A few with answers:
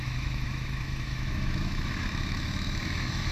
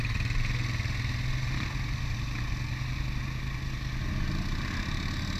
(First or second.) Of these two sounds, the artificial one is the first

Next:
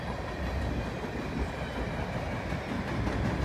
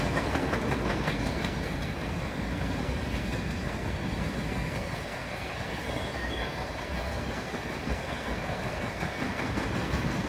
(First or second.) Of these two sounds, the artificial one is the second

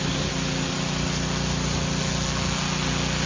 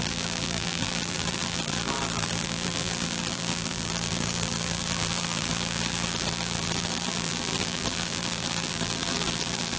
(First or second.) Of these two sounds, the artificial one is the second